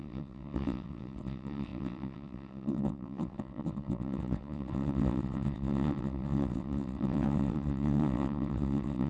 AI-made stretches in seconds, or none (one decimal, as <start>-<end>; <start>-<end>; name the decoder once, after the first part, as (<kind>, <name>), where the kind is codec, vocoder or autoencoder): 0.0-9.1 (vocoder, WaveNeXt)